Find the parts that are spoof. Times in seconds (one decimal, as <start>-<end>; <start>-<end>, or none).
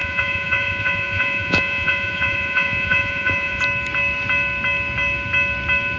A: 0.0-3.6